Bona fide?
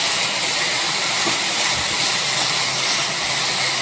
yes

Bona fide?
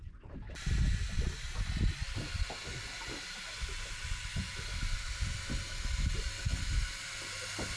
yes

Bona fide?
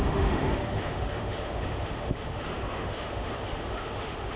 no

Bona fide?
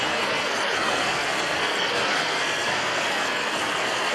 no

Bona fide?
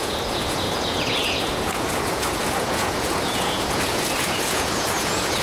no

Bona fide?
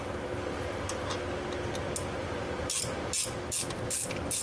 yes